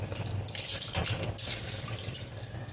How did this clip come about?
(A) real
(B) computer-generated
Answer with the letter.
B